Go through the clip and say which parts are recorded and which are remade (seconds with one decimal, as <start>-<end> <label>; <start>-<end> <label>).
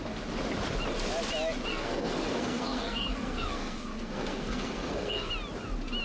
0.0-1.7 recorded; 1.7-5.3 remade; 5.3-6.0 recorded